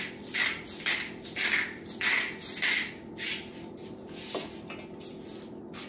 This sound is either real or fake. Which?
real